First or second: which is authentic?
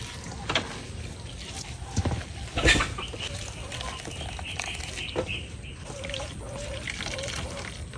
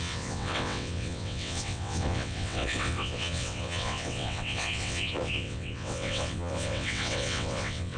first